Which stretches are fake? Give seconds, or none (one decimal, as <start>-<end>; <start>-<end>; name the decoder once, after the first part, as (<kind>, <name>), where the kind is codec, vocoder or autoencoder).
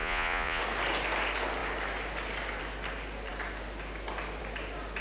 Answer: 0.0-0.6 (vocoder, Vocos)